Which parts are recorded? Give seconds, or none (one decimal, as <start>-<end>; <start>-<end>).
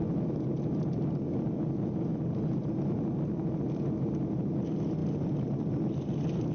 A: 0.0-6.5